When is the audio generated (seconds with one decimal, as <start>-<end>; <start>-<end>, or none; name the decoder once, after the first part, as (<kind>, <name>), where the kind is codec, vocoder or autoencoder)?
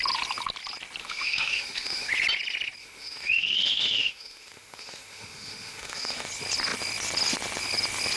1.0-2.1 (autoencoder, DAC-VAE); 2.8-6.3